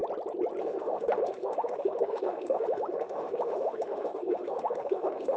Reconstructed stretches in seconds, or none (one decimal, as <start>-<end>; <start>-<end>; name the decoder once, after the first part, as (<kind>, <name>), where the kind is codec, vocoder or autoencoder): 0.6-5.4 (autoencoder, DAC-VAE)